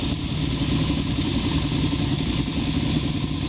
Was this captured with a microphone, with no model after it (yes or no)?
yes